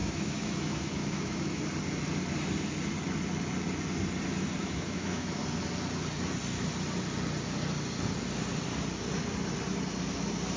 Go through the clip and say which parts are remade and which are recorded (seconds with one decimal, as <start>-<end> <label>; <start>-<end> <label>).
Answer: 0.0-1.6 remade; 1.6-4.6 recorded; 4.6-5.4 remade; 5.4-10.6 recorded